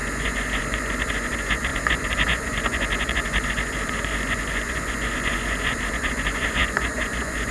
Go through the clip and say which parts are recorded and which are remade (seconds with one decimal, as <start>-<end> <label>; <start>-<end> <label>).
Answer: 0.0-7.5 remade